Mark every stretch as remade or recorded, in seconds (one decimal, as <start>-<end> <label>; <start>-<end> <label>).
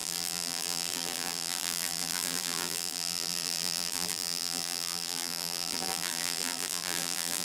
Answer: 0.0-7.4 remade